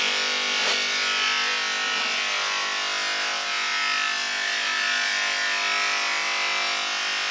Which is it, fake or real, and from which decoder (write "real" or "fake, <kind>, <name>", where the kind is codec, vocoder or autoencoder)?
real